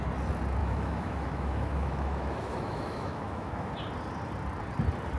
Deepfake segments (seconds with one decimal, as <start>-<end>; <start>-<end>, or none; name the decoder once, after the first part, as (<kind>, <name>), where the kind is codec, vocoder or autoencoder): 0.6-3.7 (autoencoder, DAC-VAE)